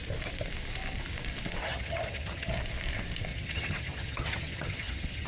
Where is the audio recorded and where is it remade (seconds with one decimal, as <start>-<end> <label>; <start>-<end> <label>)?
0.0-1.6 recorded; 1.6-2.5 remade; 2.5-3.3 recorded; 3.3-5.3 remade